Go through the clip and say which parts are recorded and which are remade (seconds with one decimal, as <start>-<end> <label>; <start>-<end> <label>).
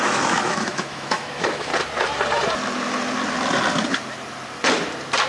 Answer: 0.0-1.7 remade; 1.7-5.3 recorded